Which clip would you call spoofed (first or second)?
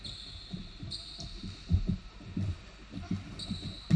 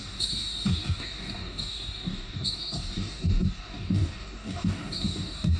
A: second